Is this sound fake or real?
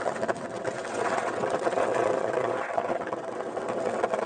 fake